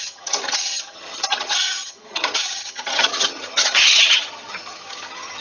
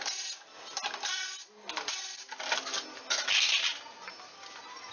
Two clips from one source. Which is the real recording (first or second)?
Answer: second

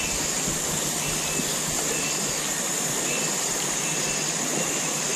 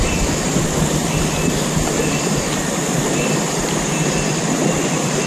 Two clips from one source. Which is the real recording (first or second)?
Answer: first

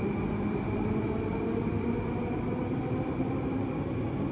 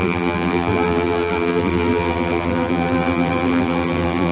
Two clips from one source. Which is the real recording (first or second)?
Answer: first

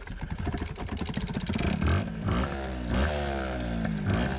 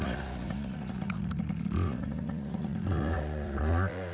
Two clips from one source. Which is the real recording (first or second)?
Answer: first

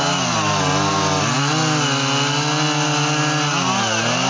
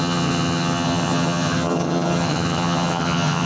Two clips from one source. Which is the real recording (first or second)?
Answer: first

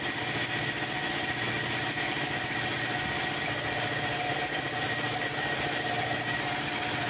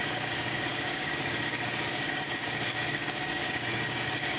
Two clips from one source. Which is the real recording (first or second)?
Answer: first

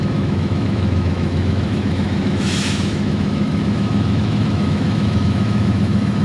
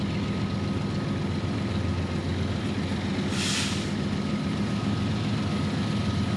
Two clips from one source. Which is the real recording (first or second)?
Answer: second